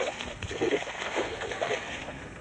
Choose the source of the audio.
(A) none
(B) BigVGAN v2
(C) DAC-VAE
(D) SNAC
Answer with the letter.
D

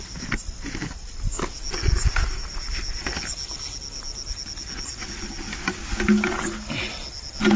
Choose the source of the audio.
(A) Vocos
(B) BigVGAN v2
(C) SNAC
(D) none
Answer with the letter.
D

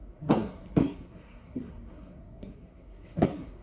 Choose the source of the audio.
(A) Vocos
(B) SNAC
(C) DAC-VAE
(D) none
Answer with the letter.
B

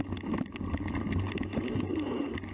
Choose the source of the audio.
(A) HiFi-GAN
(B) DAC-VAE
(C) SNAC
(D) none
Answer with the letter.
D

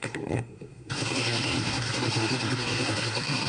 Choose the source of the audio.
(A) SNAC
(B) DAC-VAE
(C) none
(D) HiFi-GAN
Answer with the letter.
A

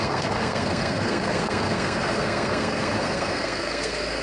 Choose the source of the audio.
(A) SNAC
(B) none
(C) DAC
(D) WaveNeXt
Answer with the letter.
A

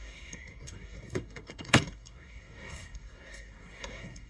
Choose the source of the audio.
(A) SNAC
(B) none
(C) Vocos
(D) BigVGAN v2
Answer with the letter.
A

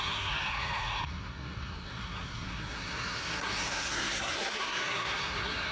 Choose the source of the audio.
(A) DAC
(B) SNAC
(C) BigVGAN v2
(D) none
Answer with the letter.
B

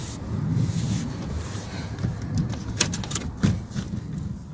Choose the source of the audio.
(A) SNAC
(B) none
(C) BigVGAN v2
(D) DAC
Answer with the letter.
B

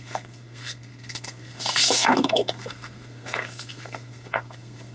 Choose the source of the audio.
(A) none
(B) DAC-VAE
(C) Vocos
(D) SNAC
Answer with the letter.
D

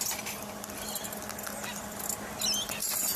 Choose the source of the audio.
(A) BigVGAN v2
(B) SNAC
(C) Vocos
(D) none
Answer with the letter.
D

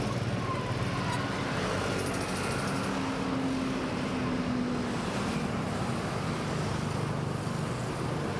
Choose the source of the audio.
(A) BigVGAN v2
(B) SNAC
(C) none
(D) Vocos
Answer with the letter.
C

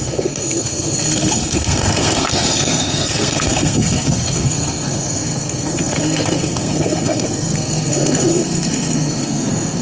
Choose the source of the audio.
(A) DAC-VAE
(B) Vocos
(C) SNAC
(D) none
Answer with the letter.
C